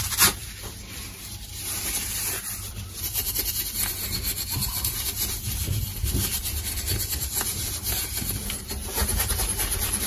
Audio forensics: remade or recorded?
remade